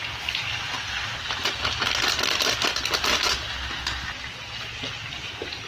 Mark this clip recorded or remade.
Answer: recorded